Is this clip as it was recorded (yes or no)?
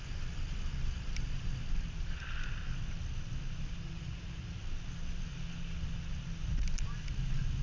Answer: yes